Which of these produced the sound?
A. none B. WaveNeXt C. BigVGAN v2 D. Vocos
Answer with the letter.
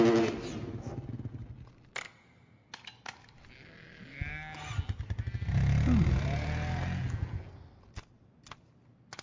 A